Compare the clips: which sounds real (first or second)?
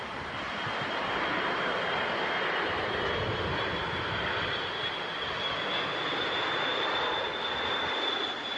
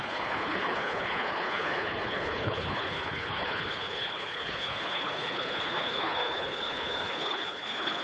first